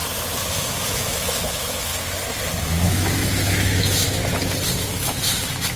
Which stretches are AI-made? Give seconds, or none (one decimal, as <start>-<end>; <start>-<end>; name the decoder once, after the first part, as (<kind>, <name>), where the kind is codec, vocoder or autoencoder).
0.5-1.9 (autoencoder, DAC-VAE); 2.6-4.2; 4.7-5.8